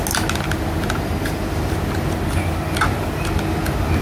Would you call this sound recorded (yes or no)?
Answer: yes